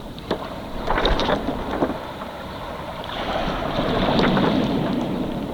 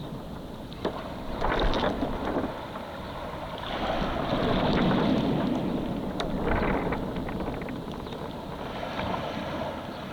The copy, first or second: first